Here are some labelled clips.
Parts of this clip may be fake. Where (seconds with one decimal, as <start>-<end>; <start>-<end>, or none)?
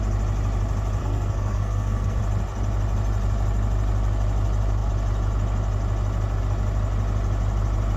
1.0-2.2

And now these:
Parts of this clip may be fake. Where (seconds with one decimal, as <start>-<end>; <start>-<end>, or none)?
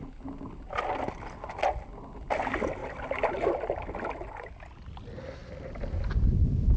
none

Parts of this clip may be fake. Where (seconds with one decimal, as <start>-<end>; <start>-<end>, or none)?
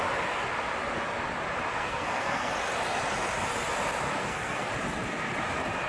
1.7-2.5; 4.2-4.7